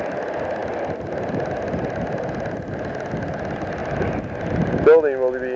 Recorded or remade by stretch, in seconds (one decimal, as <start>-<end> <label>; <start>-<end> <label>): 0.0-5.6 recorded